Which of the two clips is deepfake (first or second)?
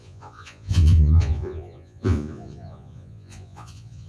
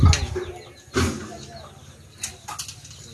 first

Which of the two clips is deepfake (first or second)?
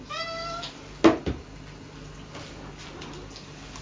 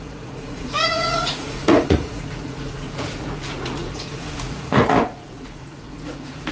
second